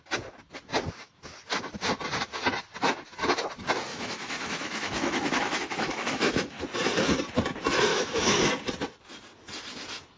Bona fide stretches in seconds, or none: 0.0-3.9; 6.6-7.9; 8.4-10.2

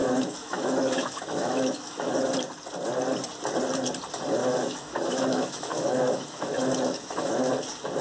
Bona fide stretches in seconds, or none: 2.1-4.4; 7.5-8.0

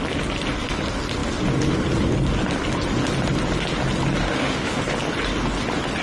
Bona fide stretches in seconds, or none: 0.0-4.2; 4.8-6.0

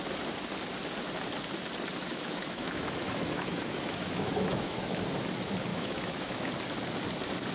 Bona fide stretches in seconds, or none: 0.0-2.1; 5.0-5.7; 6.5-7.5

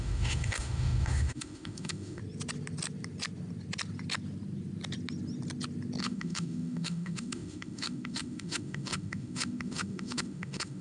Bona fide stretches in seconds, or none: 2.2-6.0

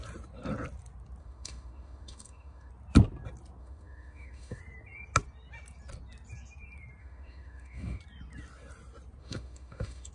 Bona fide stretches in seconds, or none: 0.0-1.2; 2.7-3.6; 4.6-7.0; 8.0-9.2

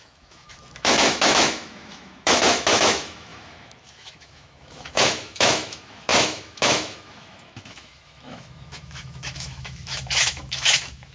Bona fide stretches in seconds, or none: none